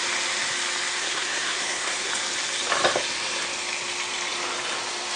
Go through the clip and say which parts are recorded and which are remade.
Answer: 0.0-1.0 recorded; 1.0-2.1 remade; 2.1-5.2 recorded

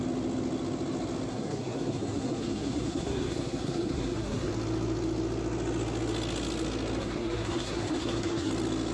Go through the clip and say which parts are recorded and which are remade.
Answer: 0.0-1.3 recorded; 1.3-4.5 remade; 4.5-7.0 recorded; 7.0-8.5 remade; 8.5-8.9 recorded

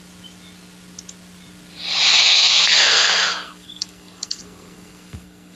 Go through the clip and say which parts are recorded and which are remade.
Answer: 0.0-2.2 recorded; 2.2-5.6 remade

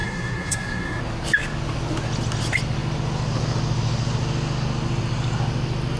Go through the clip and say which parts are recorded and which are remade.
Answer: 0.0-1.0 remade; 1.0-6.0 recorded

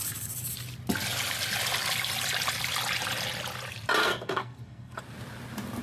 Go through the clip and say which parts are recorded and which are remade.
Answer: 0.0-4.0 recorded; 4.0-5.0 remade; 5.0-5.8 recorded

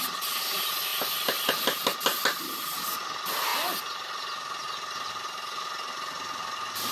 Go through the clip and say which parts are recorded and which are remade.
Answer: 0.0-6.9 recorded

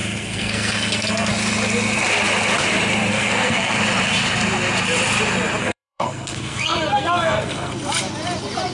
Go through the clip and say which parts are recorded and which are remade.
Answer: 0.0-1.3 remade; 1.3-3.1 recorded; 3.1-3.8 remade; 3.8-5.6 recorded; 5.6-7.7 remade; 7.7-8.7 recorded

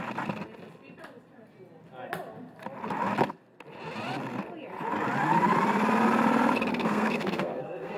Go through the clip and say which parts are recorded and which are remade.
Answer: 0.0-6.7 recorded; 6.7-8.0 remade